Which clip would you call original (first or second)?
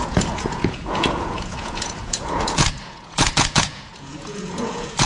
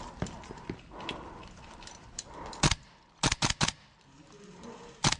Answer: second